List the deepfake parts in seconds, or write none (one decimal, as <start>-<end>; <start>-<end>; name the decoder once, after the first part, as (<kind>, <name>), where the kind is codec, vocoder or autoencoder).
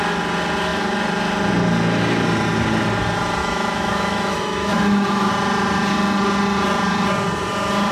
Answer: 3.4-5.3 (autoencoder, DAC-VAE)